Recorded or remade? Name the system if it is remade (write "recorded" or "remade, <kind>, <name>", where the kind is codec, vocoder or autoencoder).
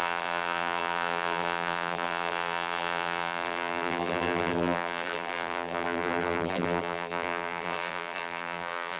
remade, vocoder, BigVGAN v2